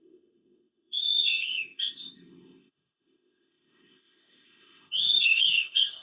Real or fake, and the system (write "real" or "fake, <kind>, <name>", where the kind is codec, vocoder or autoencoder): fake, codec, ZipCodec